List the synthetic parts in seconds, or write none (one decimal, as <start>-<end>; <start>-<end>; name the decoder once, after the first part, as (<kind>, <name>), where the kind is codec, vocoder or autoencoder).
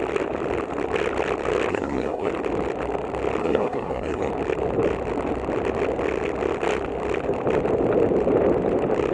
1.7-2.3 (codec, SNAC); 3.4-4.3